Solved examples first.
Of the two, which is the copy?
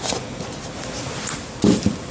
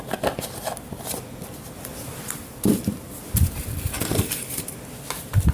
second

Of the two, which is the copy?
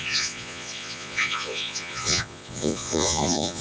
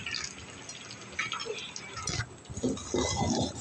first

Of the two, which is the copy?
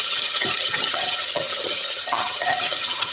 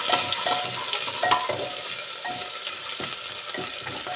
first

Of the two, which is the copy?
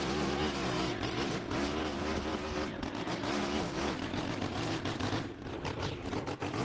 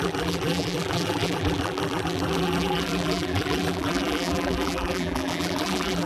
second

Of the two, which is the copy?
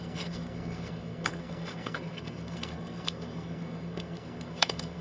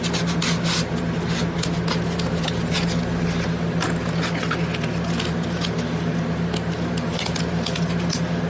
first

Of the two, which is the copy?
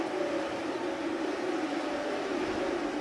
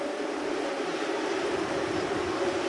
second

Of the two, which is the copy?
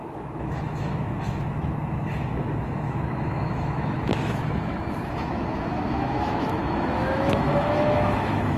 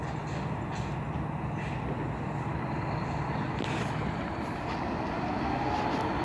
first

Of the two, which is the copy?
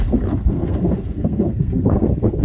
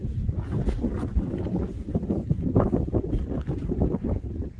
first